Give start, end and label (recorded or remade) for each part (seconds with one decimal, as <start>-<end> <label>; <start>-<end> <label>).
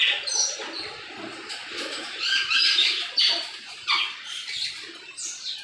0.0-1.6 recorded; 1.6-4.0 remade; 4.0-5.6 recorded